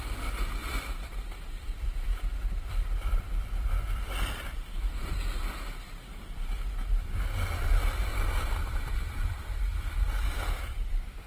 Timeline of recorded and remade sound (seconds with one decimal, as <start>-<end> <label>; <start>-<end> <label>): 0.0-0.6 recorded; 0.6-4.9 remade; 4.9-8.1 recorded; 8.1-11.3 remade